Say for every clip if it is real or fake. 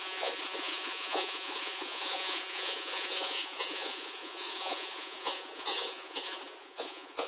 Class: fake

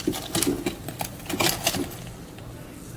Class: real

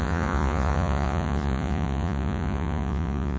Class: fake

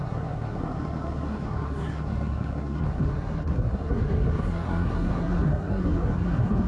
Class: fake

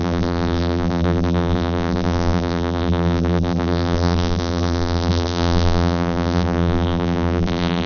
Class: fake